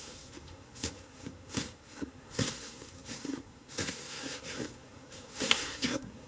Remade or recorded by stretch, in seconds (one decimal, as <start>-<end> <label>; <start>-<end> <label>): 0.0-6.3 remade